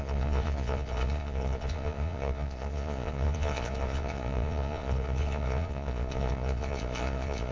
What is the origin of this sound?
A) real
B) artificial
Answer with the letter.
B